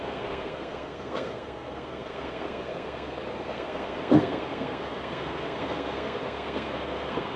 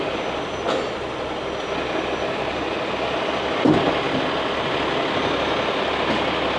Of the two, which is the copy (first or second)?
first